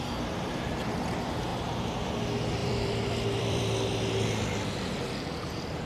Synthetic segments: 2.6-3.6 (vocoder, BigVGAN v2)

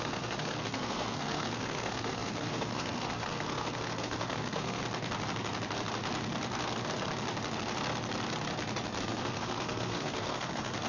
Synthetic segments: 0.0-4.8 (codec, SNAC); 9.0-10.9